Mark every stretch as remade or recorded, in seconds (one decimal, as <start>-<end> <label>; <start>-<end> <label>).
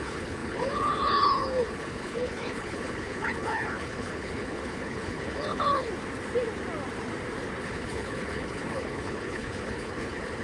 0.0-5.9 remade; 5.9-7.6 recorded; 7.6-10.4 remade